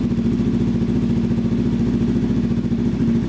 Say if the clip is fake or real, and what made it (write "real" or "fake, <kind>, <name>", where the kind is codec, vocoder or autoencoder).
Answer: real